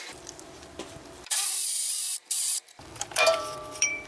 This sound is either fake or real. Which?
fake